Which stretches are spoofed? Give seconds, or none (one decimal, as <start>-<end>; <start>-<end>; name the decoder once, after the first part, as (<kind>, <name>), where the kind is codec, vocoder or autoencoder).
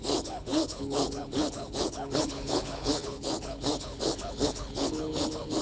0.0-5.6 (codec, HILCodec)